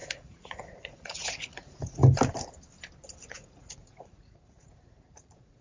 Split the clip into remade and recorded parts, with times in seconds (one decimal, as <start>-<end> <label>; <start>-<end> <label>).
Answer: 0.0-2.0 remade; 2.0-3.3 recorded; 3.3-5.6 remade